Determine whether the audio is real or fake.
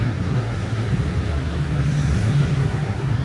fake